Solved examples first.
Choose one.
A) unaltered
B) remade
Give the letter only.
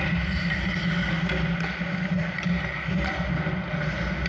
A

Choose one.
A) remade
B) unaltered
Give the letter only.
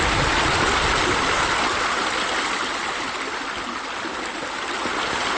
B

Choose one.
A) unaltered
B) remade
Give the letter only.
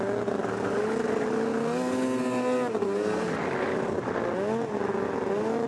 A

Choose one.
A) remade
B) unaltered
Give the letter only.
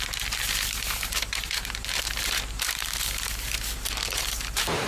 A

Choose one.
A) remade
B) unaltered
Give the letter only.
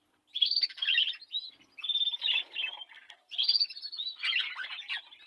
B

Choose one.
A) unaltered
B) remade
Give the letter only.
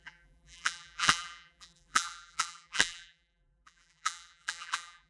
B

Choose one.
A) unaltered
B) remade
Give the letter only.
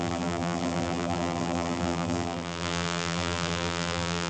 B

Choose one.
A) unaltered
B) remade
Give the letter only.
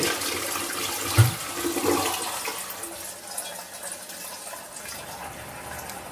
A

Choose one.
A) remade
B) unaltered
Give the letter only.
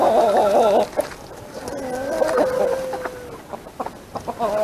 B